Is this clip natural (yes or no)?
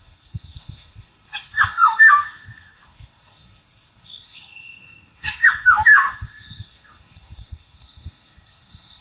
no